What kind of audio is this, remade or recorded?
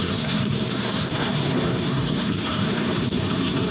remade